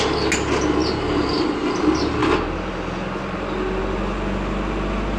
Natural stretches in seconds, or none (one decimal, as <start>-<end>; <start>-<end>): 0.0-5.2